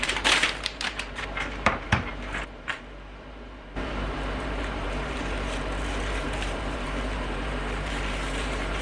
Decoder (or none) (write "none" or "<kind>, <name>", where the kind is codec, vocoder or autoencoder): vocoder, BigVGAN v2